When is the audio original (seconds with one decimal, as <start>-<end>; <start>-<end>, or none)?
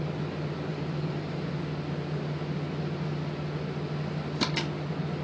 0.0-0.7; 1.5-5.2